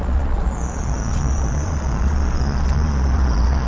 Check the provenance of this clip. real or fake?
fake